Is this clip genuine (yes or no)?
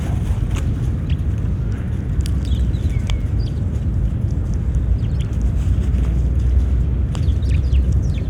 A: yes